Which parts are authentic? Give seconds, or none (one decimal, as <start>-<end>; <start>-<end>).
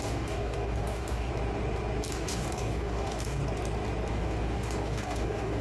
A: 1.3-2.1; 3.4-4.1